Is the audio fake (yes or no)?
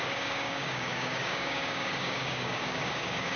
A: yes